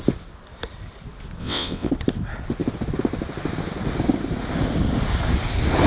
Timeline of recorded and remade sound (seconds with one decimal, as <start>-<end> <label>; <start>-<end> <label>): 0.0-1.4 recorded; 1.4-1.9 remade; 1.9-5.9 recorded